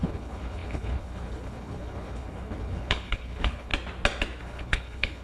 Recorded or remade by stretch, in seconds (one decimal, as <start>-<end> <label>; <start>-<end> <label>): 0.0-3.7 remade; 3.7-4.4 recorded; 4.4-5.2 remade